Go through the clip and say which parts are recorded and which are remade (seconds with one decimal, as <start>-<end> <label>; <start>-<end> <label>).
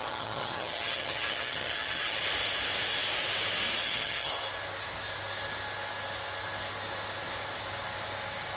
0.0-2.2 remade; 2.2-3.8 recorded; 3.8-4.3 remade; 4.3-8.6 recorded